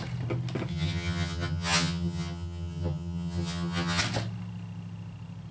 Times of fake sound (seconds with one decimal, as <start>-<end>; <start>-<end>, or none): 0.7-4.0